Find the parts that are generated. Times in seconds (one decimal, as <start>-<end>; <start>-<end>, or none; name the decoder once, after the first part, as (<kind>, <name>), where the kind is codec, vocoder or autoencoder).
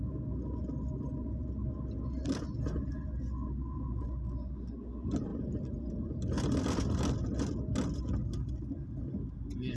none